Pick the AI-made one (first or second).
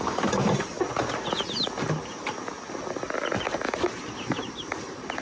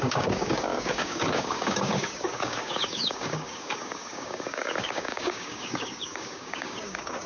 second